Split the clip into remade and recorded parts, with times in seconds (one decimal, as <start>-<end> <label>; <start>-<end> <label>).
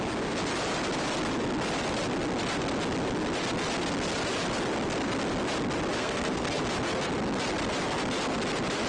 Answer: 0.0-6.0 recorded; 6.0-6.6 remade; 6.6-8.9 recorded